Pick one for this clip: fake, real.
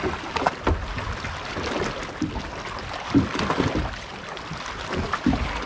real